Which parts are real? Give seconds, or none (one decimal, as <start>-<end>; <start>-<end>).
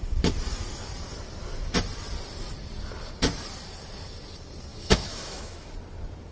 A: 0.0-4.7; 5.7-6.3